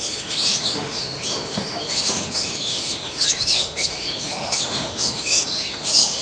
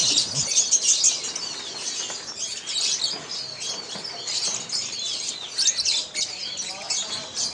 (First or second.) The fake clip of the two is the first